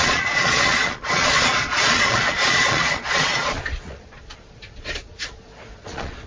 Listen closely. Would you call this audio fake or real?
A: fake